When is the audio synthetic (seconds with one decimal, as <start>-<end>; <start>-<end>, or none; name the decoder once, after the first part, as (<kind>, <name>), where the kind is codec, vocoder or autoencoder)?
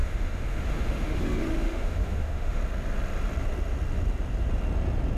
0.0-2.6 (autoencoder, DAC-VAE)